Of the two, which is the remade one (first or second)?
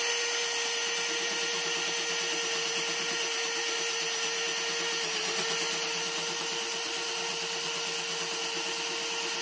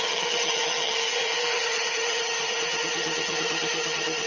second